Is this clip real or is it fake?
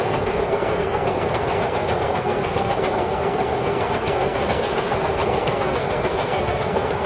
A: fake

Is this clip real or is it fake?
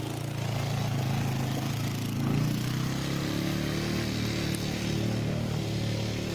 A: real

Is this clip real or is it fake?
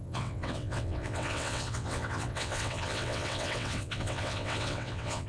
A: fake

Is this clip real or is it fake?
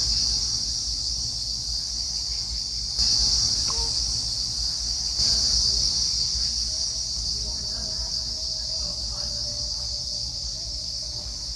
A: real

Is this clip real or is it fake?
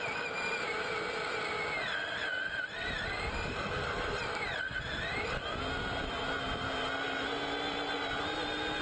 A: real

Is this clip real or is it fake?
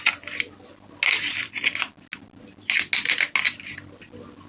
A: real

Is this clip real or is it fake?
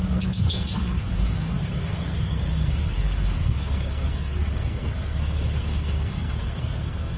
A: fake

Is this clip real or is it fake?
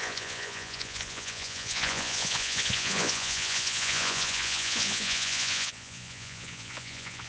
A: fake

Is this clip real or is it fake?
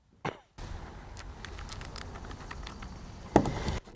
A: real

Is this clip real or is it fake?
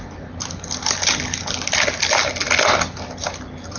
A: real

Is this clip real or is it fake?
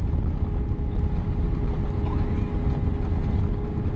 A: real